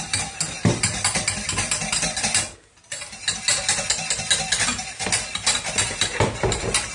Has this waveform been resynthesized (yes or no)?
no